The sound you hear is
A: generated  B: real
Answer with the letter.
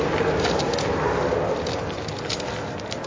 B